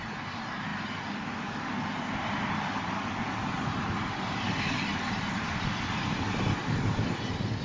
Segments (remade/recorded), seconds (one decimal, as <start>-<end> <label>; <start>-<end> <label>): 0.0-4.9 recorded; 4.9-5.5 remade; 5.5-6.6 recorded; 6.6-7.6 remade